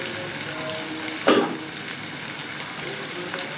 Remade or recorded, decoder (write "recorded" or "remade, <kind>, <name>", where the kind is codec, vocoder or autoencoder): recorded